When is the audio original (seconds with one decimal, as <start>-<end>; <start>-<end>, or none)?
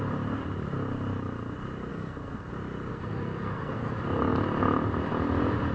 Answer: 0.0-1.9; 2.5-2.9; 3.9-5.7